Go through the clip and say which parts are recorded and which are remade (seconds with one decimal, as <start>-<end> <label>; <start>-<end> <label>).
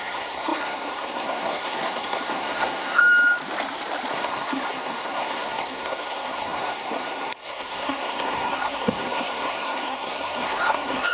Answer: 0.0-3.0 remade; 3.0-4.1 recorded; 4.1-11.1 remade